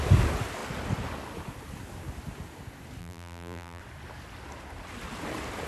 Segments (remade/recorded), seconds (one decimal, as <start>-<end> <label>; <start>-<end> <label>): 0.0-3.0 recorded; 3.0-3.8 remade; 3.8-5.7 recorded